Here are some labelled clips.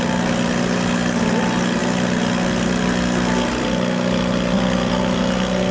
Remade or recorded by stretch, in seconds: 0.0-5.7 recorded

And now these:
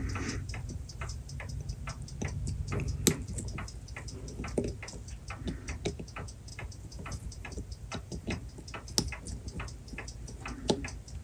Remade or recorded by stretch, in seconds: 0.0-2.0 remade; 2.0-6.5 recorded; 6.5-8.5 remade; 8.5-11.2 recorded

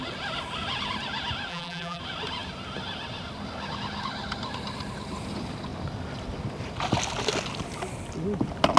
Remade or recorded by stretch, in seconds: 0.0-1.5 recorded; 1.5-2.0 remade; 2.0-8.8 recorded

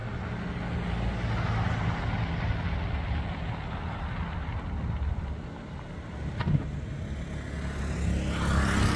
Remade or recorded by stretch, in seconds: 0.0-9.0 recorded

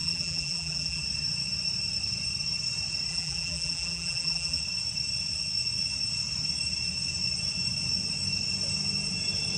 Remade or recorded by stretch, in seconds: 0.0-1.0 remade; 1.0-3.1 recorded; 3.1-4.6 remade; 4.6-9.6 recorded

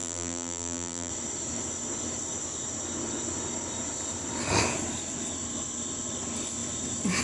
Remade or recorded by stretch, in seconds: 0.0-1.1 remade; 1.1-7.2 recorded

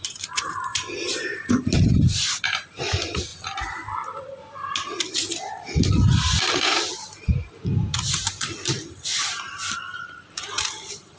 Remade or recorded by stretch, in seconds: 0.0-3.3 remade; 3.3-6.4 recorded; 6.4-7.3 remade; 7.3-8.1 recorded; 8.1-11.2 remade